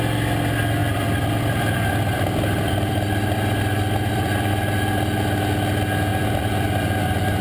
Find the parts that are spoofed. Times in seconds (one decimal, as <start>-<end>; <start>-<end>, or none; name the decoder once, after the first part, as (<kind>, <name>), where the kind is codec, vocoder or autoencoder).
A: 0.8-4.5 (vocoder, BigVGAN v2); 6.1-7.4